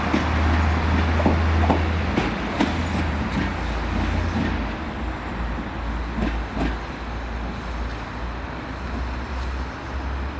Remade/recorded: recorded